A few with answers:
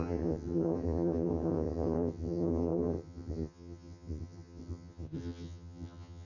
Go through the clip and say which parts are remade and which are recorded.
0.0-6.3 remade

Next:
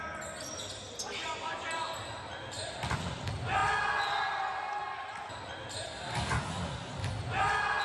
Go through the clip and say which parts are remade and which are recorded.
0.0-7.8 recorded